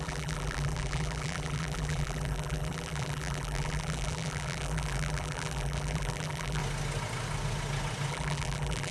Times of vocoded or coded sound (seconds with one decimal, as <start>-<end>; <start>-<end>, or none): 0.0-6.6; 8.1-8.9